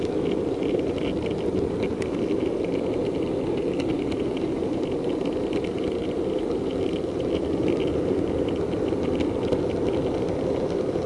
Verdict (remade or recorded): recorded